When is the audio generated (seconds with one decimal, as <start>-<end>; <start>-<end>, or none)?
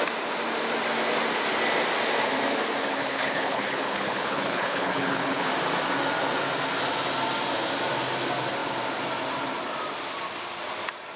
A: 2.8-5.5